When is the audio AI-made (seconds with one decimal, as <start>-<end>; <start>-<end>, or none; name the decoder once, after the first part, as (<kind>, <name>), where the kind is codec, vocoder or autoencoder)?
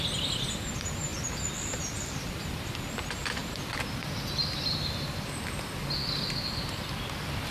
1.1-2.7 (vocoder, BigVGAN v2)